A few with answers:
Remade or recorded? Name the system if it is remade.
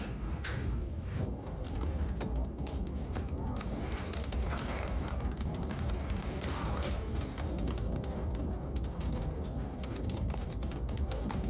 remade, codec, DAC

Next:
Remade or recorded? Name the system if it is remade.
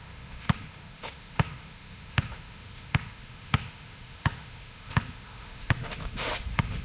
remade, autoencoder, DAC-VAE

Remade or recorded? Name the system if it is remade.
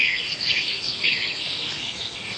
remade, codec, SNAC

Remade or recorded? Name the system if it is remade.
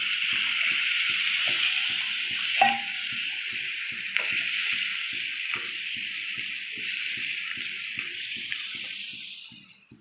remade, vocoder, BigVGAN v2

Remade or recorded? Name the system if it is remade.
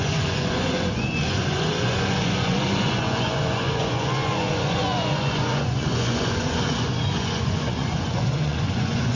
remade, vocoder, Vocos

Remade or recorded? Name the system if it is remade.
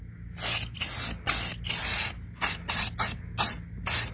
recorded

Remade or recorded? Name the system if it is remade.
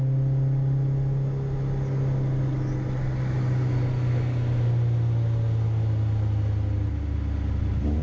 recorded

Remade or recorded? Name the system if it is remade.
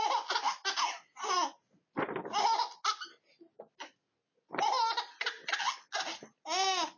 recorded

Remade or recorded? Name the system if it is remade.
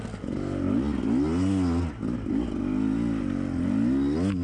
recorded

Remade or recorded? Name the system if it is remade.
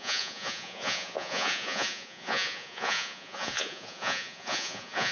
remade, vocoder, Vocos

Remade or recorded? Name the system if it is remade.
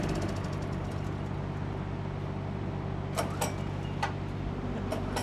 recorded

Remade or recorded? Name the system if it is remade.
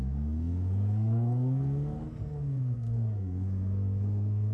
remade, codec, SNAC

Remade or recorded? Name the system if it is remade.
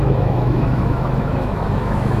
remade, autoencoder, DAC-VAE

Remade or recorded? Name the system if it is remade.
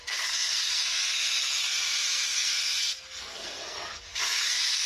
remade, codec, SNAC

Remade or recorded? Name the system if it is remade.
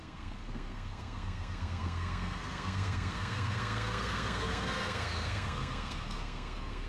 remade, codec, SNAC